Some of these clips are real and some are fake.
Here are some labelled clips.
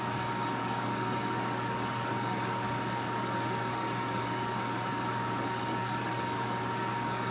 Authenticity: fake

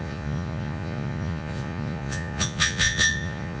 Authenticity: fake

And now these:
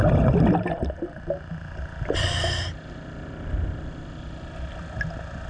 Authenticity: real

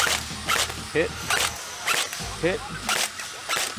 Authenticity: real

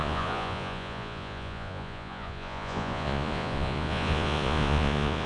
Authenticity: fake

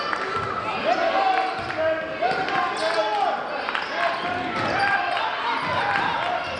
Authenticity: real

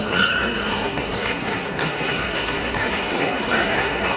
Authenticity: fake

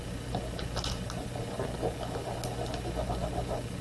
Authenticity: real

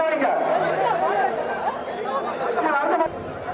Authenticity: real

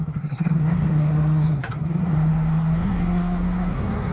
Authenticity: fake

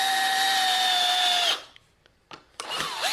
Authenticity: fake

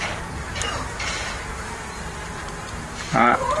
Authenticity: fake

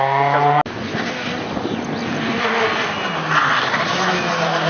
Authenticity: real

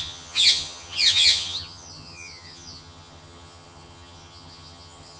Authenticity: fake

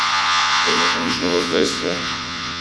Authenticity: fake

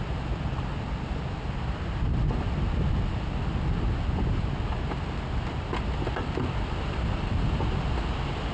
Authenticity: real